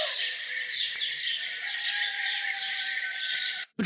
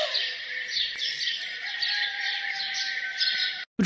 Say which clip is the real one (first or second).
second